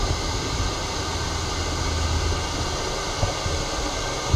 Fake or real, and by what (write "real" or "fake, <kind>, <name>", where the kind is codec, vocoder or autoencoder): real